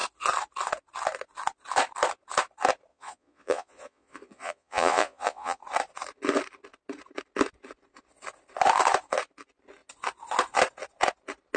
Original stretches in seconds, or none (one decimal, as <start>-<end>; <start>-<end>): 0.0-2.9; 5.6-11.6